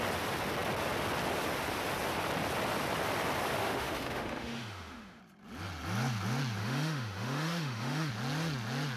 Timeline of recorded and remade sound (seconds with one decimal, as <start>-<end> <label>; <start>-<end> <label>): 0.0-3.6 recorded; 3.6-5.2 remade; 5.2-6.6 recorded; 6.6-8.1 remade; 8.1-9.0 recorded